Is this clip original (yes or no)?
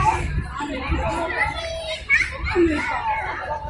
yes